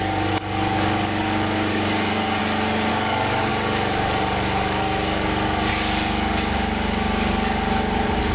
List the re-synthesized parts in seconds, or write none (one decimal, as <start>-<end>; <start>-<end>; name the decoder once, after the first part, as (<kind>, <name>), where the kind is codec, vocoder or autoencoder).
0.0-2.4 (codec, DAC); 2.9-8.3